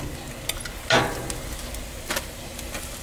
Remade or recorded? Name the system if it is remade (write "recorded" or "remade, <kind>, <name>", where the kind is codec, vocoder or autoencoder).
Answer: recorded